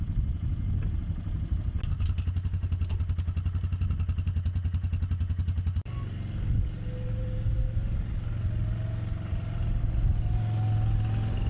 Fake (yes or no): no